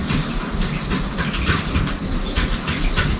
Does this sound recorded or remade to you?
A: recorded